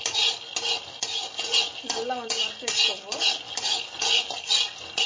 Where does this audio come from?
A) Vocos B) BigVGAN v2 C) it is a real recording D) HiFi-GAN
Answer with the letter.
C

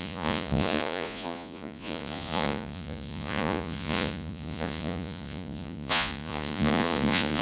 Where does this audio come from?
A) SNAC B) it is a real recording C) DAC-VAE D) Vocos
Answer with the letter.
D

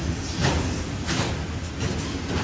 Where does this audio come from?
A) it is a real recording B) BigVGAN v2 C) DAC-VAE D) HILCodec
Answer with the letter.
A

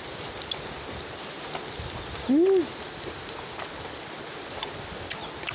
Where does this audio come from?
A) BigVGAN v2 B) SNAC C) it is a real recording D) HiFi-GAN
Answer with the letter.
C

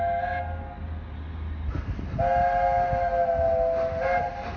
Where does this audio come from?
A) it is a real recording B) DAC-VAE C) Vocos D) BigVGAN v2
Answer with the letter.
A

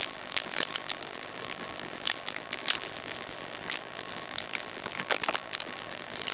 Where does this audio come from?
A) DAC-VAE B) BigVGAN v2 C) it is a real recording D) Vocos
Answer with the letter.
B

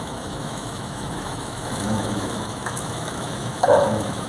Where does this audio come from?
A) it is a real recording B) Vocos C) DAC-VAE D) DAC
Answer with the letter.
C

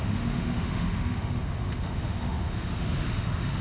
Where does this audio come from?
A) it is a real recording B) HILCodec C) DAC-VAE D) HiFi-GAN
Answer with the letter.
C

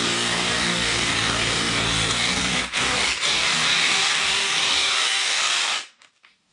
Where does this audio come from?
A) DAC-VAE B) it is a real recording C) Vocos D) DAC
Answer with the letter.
D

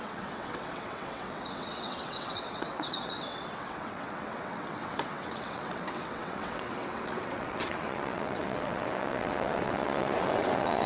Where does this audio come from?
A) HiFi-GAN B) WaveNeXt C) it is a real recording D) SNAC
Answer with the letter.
B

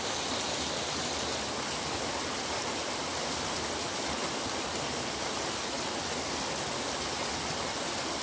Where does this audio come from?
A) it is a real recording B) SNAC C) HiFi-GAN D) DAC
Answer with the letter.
A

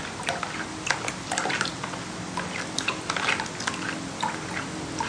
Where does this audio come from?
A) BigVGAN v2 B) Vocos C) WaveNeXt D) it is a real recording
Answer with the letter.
D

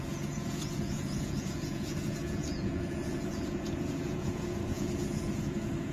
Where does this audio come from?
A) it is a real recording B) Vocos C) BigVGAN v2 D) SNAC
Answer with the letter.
B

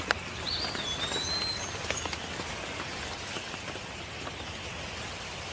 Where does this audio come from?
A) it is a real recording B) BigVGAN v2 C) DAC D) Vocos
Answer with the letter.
A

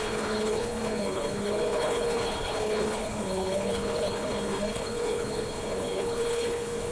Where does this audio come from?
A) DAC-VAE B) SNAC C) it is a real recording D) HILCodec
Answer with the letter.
D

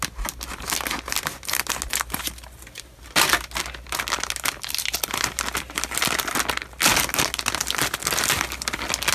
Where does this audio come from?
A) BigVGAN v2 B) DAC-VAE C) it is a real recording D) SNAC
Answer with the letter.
C